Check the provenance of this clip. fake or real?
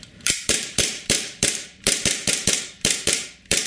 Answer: fake